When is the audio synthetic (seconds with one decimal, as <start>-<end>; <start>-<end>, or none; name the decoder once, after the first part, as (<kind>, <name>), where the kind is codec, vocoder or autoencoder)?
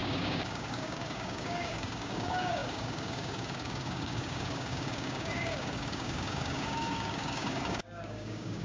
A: 0.0-8.6 (codec, DAC)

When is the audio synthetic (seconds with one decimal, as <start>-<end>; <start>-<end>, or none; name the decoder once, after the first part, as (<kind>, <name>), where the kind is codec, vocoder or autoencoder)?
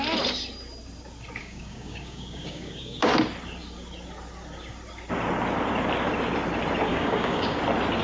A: 1.4-3.1 (codec, DAC); 6.9-7.6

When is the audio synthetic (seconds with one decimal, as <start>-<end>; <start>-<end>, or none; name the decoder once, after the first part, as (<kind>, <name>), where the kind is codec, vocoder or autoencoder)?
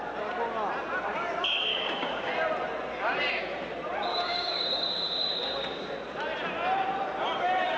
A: 1.7-2.3 (codec, DAC); 4.1-5.9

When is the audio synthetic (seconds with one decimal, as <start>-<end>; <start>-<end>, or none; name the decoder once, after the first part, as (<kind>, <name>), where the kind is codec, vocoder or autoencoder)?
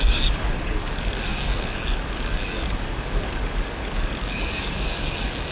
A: 0.0-5.5 (codec, DAC)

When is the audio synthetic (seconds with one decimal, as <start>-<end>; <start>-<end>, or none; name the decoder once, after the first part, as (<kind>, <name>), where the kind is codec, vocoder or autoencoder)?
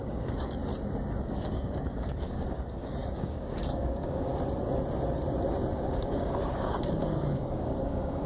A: 0.0-0.6 (codec, DAC); 1.2-4.3; 5.9-8.3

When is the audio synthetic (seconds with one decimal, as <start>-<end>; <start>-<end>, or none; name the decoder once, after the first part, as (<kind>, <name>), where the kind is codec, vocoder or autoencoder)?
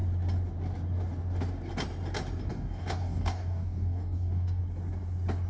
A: 2.5-4.6 (codec, DAC)